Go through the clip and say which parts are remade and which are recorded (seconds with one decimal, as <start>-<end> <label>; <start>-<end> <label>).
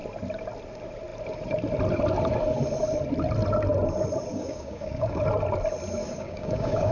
0.0-4.3 recorded; 4.3-5.2 remade; 5.2-6.0 recorded; 6.0-6.9 remade